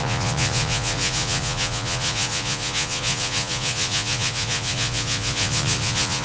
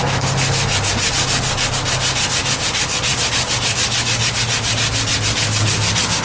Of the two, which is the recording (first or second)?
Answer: second